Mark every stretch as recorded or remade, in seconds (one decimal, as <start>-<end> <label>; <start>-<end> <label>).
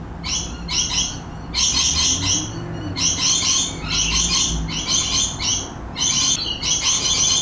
0.0-7.4 recorded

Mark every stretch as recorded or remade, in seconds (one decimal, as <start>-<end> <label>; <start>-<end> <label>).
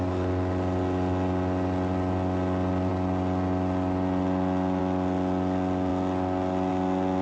0.0-7.2 recorded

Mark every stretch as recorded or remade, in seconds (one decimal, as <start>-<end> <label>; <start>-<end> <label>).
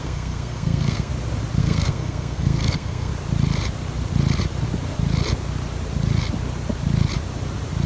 0.0-1.1 remade; 1.1-1.6 recorded; 1.6-3.1 remade; 3.1-7.9 recorded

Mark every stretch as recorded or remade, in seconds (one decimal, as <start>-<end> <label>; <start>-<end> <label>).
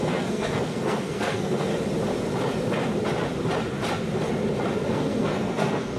0.0-1.7 remade; 1.7-4.9 recorded; 4.9-6.0 remade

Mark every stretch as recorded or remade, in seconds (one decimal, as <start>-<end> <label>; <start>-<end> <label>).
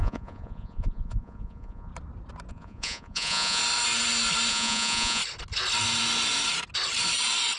0.0-1.9 remade; 1.9-2.5 recorded; 2.5-3.6 remade; 3.6-4.5 recorded; 4.5-5.2 remade; 5.2-7.6 recorded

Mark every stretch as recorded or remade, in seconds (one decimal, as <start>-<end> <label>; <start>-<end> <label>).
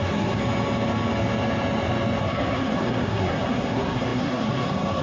0.0-0.4 remade; 0.4-2.2 recorded; 2.2-5.0 remade